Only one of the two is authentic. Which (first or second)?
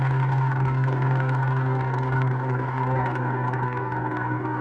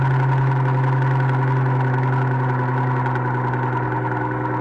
second